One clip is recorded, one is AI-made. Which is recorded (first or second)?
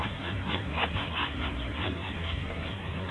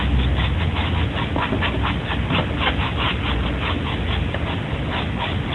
second